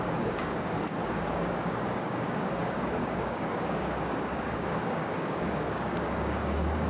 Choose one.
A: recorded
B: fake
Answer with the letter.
B